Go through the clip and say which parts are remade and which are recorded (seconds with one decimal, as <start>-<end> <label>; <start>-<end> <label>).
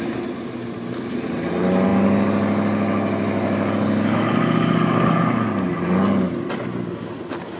0.0-7.6 recorded